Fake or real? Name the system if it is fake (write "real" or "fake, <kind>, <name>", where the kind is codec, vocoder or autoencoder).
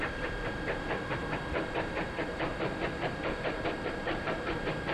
fake, vocoder, BigVGAN v2